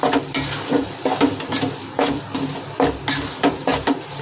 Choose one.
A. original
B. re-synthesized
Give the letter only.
A